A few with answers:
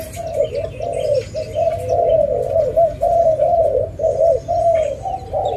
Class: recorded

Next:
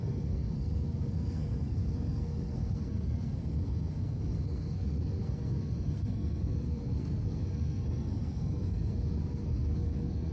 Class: remade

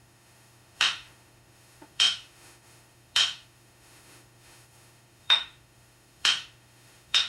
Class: remade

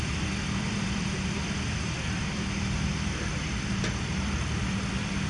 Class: remade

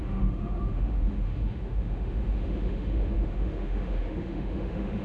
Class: remade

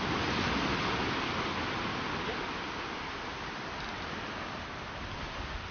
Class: recorded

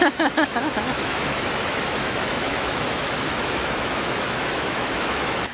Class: remade